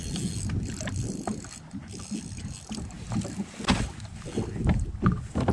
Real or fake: real